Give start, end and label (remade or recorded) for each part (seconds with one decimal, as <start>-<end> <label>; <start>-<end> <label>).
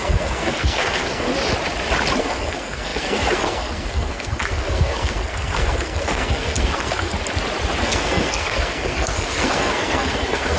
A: 0.0-1.3 remade; 1.3-2.2 recorded; 2.2-7.1 remade; 7.1-7.8 recorded; 7.8-10.6 remade